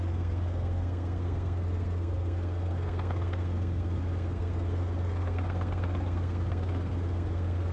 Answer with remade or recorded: remade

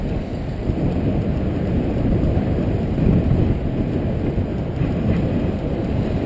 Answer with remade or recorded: recorded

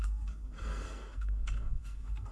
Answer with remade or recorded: remade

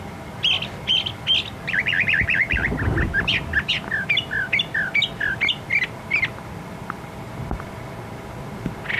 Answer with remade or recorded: recorded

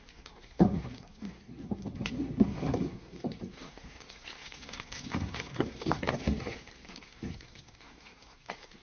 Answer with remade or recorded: remade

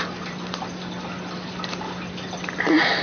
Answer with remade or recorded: recorded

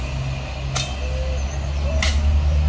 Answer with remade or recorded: recorded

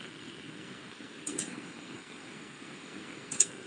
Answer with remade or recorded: remade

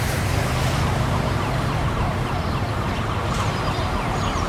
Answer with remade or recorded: recorded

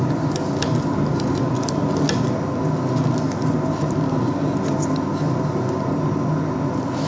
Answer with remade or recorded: recorded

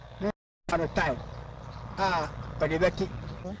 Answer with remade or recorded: recorded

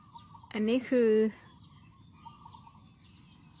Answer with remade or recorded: recorded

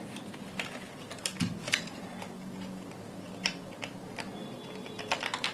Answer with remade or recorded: recorded